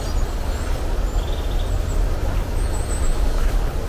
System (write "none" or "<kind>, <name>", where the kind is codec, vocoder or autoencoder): none